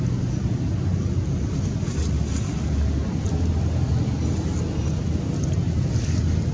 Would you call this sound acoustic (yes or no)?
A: yes